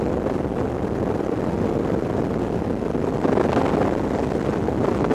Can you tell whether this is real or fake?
real